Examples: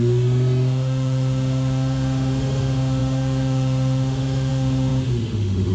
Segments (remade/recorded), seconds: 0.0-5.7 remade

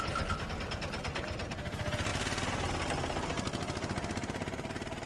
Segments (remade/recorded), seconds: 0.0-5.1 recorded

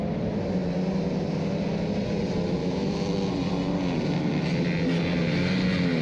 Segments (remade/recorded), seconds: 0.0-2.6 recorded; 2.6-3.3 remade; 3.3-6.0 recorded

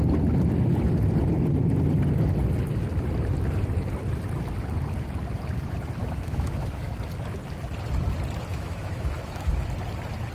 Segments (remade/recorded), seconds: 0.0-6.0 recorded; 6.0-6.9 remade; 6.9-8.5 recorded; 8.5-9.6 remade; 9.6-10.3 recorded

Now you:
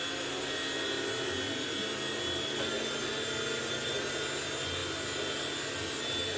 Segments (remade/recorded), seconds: 0.0-6.4 recorded

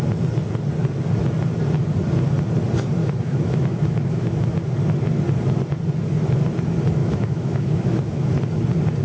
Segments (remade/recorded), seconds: 0.0-3.0 recorded; 3.0-4.7 remade; 4.7-7.0 recorded; 7.0-8.3 remade; 8.3-9.0 recorded

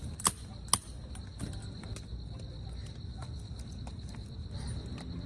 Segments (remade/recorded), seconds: 0.0-5.3 recorded